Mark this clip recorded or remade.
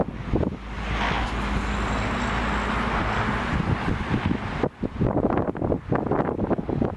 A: recorded